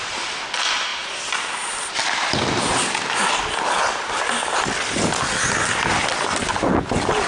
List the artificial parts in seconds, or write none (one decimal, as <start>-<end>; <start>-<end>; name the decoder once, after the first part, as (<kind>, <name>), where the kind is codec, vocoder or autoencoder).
none